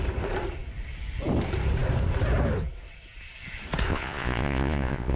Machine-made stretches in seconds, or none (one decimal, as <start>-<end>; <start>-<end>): 3.9-5.2